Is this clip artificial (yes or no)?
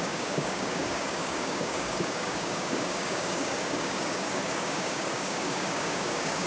yes